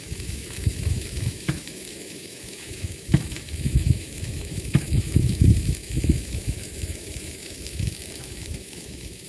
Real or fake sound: fake